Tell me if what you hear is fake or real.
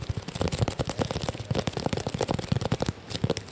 real